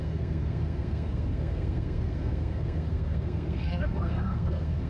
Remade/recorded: remade